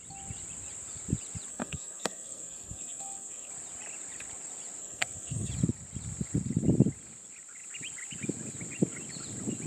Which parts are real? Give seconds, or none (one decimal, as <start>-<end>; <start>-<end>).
0.0-1.5; 3.5-4.8; 5.5-9.7